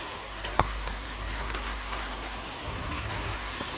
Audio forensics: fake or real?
fake